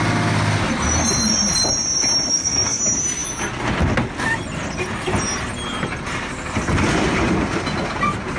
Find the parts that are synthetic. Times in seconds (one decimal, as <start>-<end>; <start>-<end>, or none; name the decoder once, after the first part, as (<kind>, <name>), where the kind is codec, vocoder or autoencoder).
2.3-2.8 (codec, SNAC)